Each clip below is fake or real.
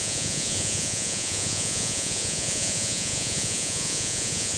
fake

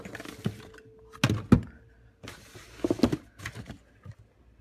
real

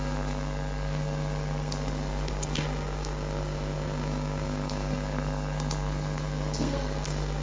fake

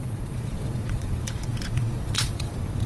fake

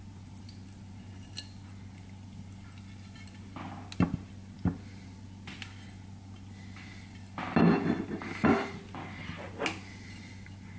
real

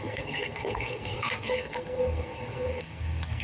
fake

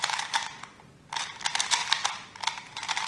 real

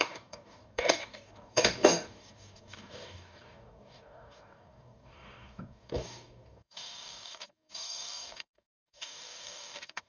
fake